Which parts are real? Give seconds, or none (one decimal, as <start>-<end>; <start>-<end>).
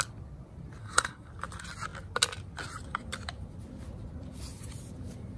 0.0-0.8; 1.3-5.4